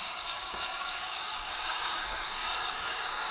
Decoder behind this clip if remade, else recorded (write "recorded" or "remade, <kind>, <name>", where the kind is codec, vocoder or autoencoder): remade, codec, DAC